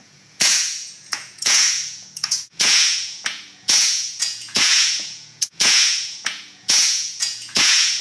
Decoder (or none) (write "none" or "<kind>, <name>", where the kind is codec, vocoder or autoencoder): vocoder, Vocos